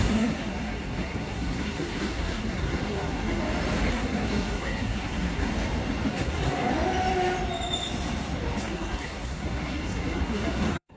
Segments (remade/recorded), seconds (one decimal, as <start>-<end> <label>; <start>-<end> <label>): 0.0-3.4 remade; 3.4-3.9 recorded; 3.9-5.5 remade; 5.5-6.1 recorded; 6.1-6.7 remade; 6.7-8.6 recorded; 8.6-11.0 remade